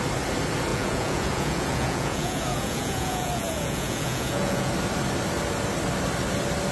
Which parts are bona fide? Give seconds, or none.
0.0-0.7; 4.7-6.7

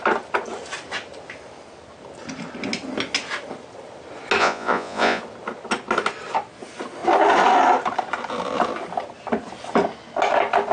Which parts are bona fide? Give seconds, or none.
0.0-4.4; 5.2-10.7

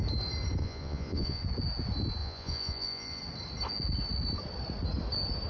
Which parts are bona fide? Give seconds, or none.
0.0-0.6; 1.4-2.2; 3.2-5.5

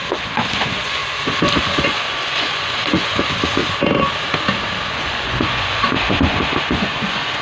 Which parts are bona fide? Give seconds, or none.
1.0-1.6; 3.6-4.9

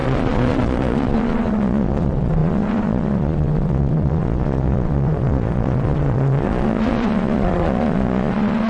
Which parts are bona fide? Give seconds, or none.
none

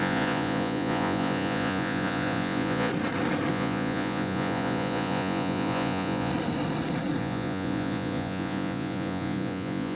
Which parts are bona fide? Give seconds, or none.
2.9-3.5; 6.3-7.2

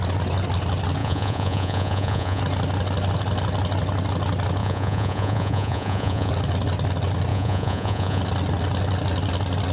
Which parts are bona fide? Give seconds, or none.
0.0-1.0; 2.4-4.6; 6.3-7.3; 8.2-9.7

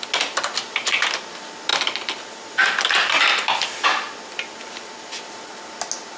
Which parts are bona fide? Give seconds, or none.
0.0-6.2